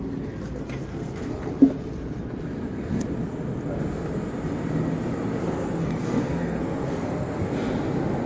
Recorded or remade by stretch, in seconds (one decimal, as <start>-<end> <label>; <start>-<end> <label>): 0.0-0.9 recorded; 0.9-1.5 remade; 1.5-5.4 recorded; 5.4-7.5 remade; 7.5-8.3 recorded

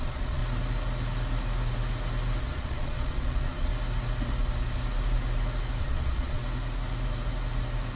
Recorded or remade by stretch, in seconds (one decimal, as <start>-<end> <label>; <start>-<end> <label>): 0.0-0.4 remade; 0.4-2.4 recorded; 2.4-3.7 remade; 3.7-5.8 recorded; 5.8-6.4 remade; 6.4-8.0 recorded

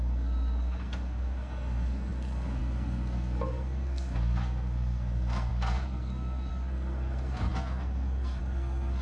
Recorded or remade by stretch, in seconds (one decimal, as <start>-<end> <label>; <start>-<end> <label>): 0.0-9.0 remade

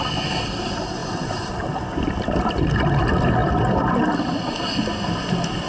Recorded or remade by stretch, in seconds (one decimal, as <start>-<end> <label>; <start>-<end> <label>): 0.0-5.7 recorded

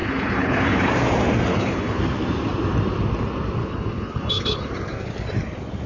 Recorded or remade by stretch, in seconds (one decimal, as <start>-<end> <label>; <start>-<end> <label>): 0.0-0.9 remade; 0.9-1.5 recorded; 1.5-2.0 remade; 2.0-3.6 recorded; 3.6-4.7 remade; 4.7-5.9 recorded

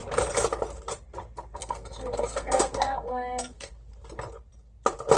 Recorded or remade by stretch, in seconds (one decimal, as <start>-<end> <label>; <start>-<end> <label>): 0.0-1.6 recorded; 1.6-3.7 remade; 3.7-5.2 recorded

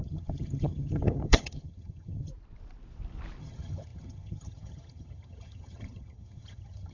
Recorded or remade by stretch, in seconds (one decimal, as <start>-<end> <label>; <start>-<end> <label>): 0.0-2.3 remade; 2.3-3.4 recorded; 3.4-6.9 remade